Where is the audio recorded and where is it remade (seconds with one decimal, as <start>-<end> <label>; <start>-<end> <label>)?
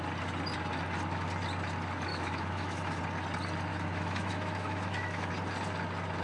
0.0-2.1 recorded; 2.1-3.0 remade; 3.0-3.7 recorded; 3.7-5.3 remade; 5.3-6.2 recorded